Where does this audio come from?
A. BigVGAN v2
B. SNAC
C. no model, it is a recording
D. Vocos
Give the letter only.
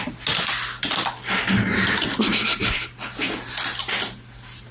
C